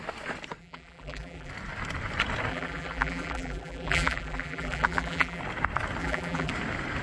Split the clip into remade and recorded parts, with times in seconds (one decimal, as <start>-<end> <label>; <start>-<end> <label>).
0.0-0.6 recorded; 0.6-1.5 remade; 1.5-2.5 recorded; 2.5-5.4 remade; 5.4-6.0 recorded; 6.0-6.5 remade; 6.5-7.0 recorded